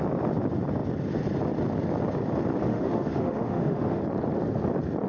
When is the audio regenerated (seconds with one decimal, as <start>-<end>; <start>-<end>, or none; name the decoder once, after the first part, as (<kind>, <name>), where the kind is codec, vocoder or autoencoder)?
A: 2.7-4.0 (autoencoder, DAC-VAE)